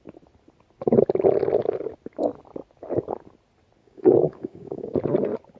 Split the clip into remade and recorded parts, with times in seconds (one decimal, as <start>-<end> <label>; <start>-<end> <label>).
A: 0.0-3.8 recorded; 3.8-5.0 remade; 5.0-5.6 recorded